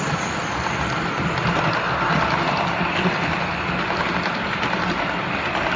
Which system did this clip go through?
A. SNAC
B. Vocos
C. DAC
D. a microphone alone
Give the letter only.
D